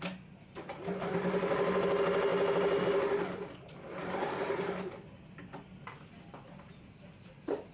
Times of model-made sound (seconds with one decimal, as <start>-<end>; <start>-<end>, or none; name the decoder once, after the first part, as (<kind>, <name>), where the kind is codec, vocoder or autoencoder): none

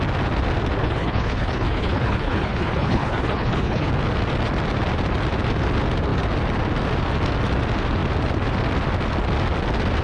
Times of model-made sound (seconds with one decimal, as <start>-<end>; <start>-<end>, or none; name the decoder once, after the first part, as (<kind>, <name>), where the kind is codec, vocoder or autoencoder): 0.8-3.9 (codec, HILCodec)

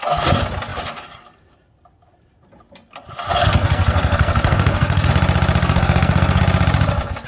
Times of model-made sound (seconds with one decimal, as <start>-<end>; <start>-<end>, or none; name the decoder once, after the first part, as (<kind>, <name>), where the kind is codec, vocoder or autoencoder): 3.4-5.1 (codec, SNAC); 5.6-6.4

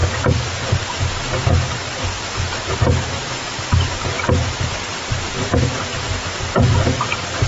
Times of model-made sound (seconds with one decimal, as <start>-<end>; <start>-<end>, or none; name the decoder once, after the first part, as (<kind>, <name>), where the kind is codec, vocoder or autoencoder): none

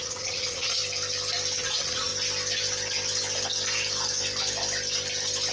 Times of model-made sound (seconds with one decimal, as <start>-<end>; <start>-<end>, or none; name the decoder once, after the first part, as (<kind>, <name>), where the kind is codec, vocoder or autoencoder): 0.0-0.8 (vocoder, Vocos); 1.6-2.1

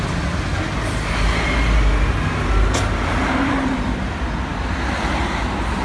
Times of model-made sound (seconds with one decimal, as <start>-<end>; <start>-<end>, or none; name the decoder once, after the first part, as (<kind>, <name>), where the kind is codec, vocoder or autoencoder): none

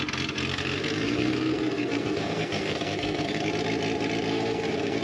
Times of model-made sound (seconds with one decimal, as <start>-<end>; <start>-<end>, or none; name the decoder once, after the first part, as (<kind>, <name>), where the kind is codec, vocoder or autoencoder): 0.5-3.5 (codec, SNAC); 4.3-5.0